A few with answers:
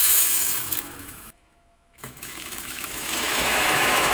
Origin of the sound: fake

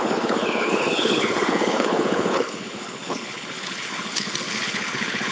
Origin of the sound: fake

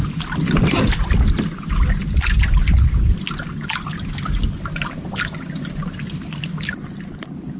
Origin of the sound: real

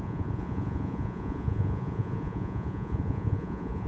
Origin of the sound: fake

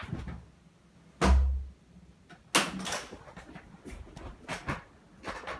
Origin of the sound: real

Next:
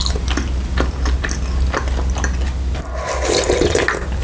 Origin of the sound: real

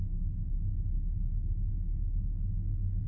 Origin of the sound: real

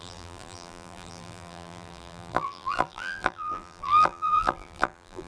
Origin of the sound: fake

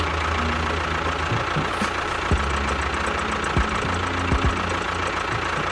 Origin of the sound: real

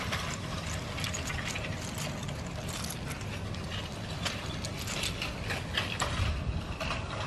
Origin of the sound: real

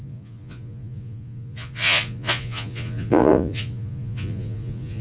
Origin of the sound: fake